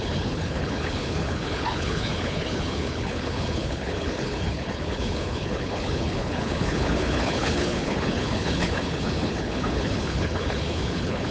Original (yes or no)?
no